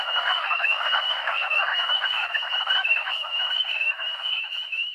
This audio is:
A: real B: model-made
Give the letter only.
B